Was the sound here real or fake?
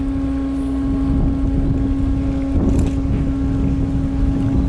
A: real